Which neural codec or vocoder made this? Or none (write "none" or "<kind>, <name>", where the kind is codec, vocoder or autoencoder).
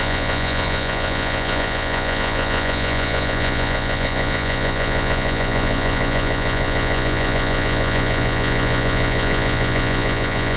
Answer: vocoder, Vocos